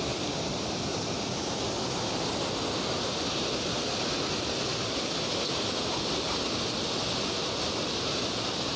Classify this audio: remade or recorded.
recorded